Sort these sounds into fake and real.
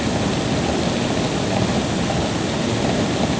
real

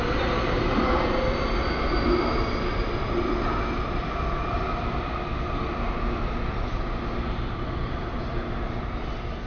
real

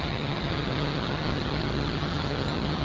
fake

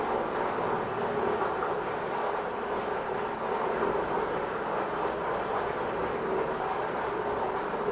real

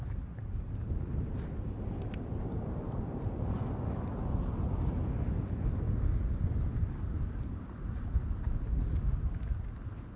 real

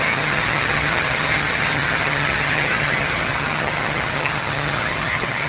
fake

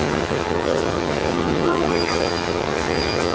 fake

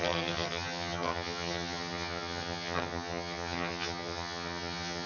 fake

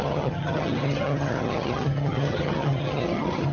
fake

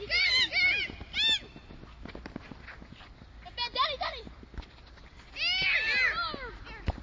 real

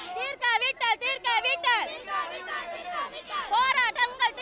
real